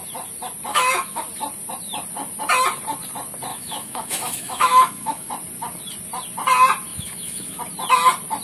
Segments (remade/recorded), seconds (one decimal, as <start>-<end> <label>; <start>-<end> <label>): 0.0-0.7 recorded; 0.7-1.2 remade; 1.2-3.5 recorded; 3.5-5.3 remade; 5.3-6.9 recorded; 6.9-7.6 remade; 7.6-8.4 recorded